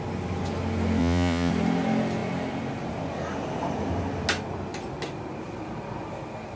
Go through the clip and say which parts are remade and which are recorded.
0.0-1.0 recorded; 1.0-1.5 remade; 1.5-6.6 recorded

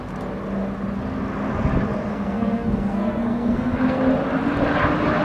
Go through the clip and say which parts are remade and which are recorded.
0.0-2.1 recorded; 2.1-4.0 remade; 4.0-5.2 recorded